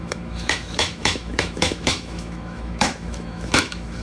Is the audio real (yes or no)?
no